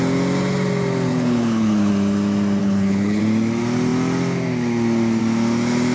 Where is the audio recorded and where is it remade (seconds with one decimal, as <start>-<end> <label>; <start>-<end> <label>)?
0.0-1.1 recorded; 1.1-1.9 remade; 1.9-2.6 recorded; 2.6-3.2 remade; 3.2-5.9 recorded